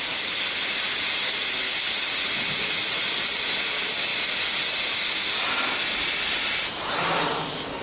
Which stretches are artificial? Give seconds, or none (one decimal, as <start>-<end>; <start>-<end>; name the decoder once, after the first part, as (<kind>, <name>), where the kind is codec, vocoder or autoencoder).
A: 2.8-3.4 (vocoder, Vocos)